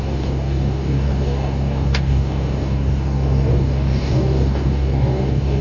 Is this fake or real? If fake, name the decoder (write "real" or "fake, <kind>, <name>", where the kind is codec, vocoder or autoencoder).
fake, codec, DAC